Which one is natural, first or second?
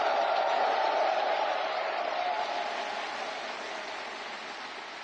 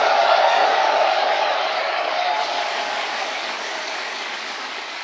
first